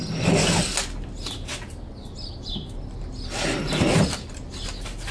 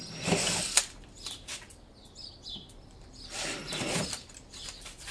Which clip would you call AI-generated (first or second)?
second